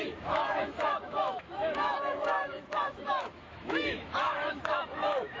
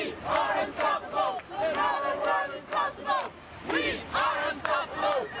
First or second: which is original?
second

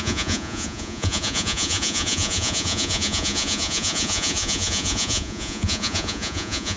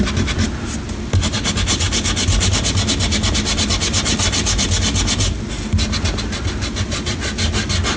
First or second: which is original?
second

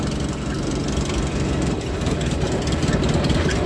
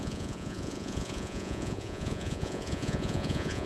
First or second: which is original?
first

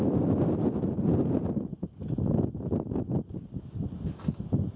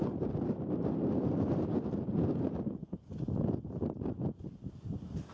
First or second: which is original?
first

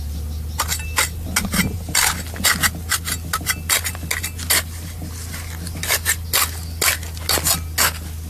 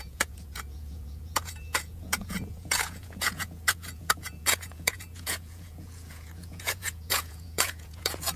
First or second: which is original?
first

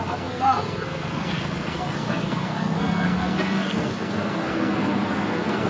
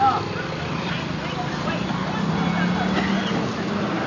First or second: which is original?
second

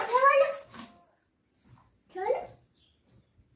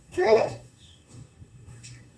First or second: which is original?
first